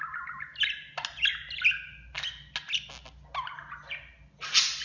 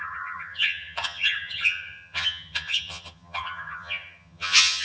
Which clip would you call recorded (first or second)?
first